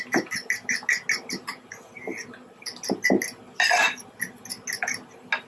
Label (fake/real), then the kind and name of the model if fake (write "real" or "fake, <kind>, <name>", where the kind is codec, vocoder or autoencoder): real